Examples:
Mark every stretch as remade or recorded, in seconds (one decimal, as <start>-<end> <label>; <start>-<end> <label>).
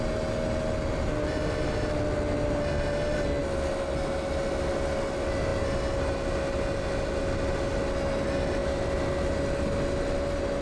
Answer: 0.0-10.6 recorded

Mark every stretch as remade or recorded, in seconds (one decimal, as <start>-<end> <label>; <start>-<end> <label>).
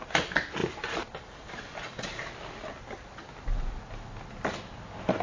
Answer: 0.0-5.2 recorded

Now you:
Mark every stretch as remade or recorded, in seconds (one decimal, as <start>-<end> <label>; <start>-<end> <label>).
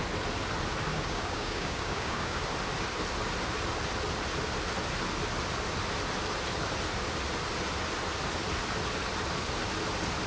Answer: 0.0-0.9 recorded; 0.9-2.4 remade; 2.4-10.3 recorded